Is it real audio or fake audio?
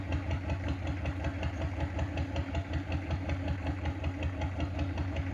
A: real